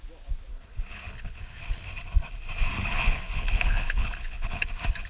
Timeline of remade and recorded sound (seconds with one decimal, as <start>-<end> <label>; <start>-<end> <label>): 0.0-0.5 recorded; 0.5-1.4 remade; 1.4-2.8 recorded; 2.8-4.6 remade; 4.6-5.1 recorded